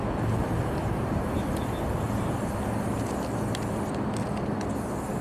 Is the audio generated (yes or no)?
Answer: no